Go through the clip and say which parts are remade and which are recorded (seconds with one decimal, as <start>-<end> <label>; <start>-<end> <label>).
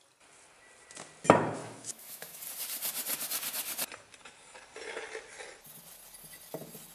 0.0-1.6 recorded; 1.6-2.4 remade; 2.4-6.9 recorded